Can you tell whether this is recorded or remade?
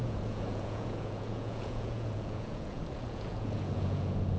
remade